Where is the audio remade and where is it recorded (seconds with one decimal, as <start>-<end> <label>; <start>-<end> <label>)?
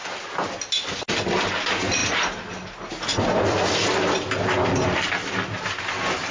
0.0-6.3 recorded